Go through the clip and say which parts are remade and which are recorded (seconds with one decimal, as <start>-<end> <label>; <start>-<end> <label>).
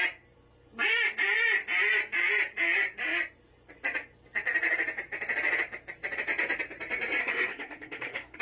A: 0.0-7.2 recorded; 7.2-8.4 remade